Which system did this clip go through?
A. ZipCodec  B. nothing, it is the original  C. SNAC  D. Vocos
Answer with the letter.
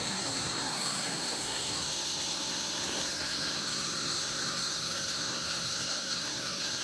C